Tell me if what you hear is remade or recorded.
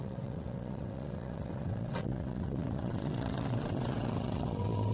remade